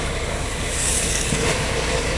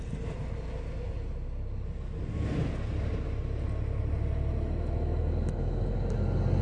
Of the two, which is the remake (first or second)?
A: first